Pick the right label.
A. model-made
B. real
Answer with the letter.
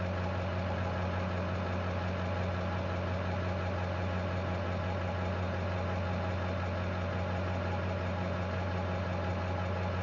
B